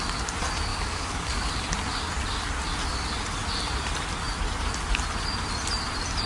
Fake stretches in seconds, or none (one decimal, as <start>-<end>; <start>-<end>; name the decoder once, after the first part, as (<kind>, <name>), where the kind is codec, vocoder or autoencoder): 0.7-1.5 (codec, DAC)

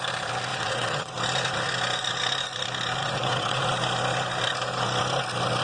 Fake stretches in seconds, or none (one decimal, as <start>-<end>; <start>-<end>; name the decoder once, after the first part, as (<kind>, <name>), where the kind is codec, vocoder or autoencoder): 0.5-1.1 (vocoder, WaveNeXt); 3.0-3.6

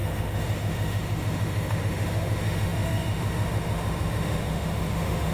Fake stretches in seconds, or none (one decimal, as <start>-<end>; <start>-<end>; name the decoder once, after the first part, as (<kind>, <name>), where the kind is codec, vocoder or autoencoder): 0.0-5.3 (autoencoder, DAC-VAE)

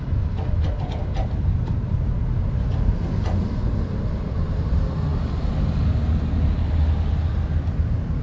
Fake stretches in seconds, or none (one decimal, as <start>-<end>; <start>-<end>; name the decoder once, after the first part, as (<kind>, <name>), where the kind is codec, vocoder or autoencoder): none

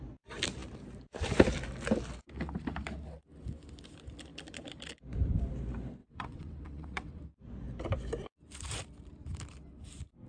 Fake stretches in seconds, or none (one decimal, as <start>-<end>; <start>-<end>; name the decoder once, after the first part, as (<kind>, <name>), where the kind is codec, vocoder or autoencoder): 6.0-7.2 (vocoder, WaveNeXt)

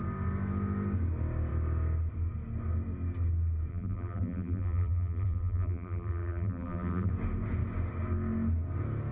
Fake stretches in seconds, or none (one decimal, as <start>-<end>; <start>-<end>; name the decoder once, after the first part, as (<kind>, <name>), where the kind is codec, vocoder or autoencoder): 3.7-7.1 (vocoder, BigVGAN v2)